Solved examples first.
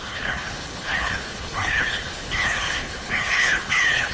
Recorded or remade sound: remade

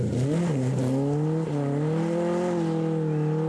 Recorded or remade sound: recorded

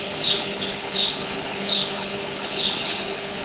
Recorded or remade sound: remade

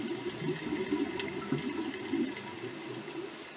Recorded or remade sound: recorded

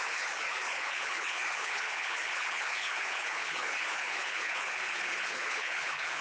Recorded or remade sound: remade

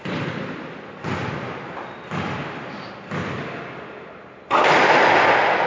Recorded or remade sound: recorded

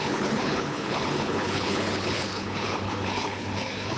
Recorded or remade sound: remade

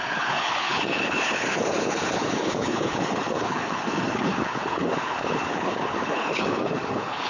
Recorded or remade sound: remade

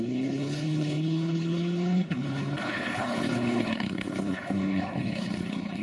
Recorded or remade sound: remade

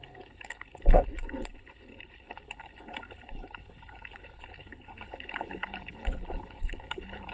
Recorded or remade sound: remade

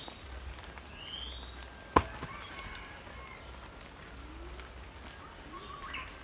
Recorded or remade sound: recorded